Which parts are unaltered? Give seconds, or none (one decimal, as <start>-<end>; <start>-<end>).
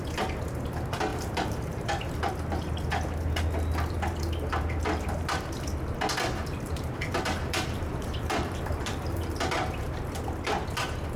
0.0-1.1; 2.1-6.4; 9.4-11.2